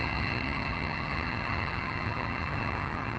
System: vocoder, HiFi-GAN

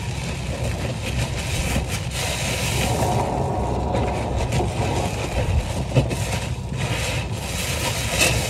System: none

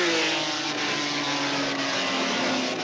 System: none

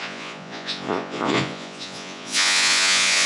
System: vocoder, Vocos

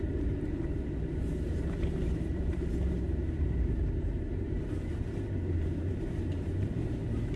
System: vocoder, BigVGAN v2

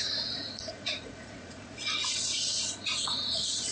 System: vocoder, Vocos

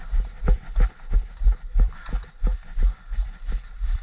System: none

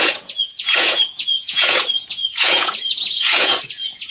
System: vocoder, Vocos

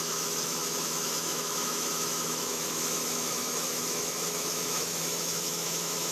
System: autoencoder, DAC-VAE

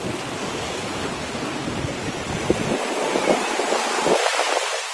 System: none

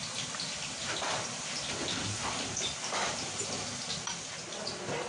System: none